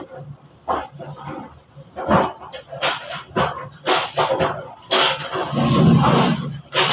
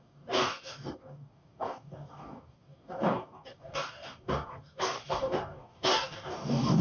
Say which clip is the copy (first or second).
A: second